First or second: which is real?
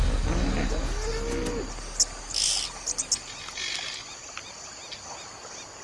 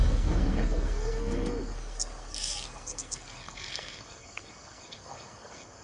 first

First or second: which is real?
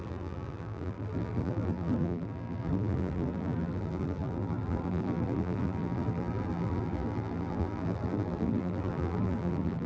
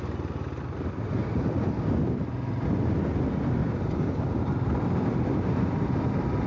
second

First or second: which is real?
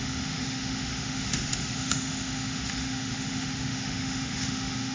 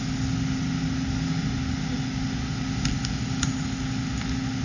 second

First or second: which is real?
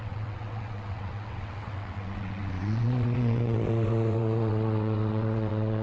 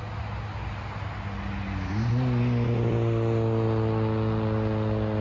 second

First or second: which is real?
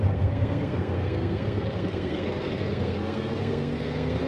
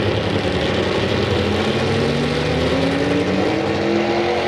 second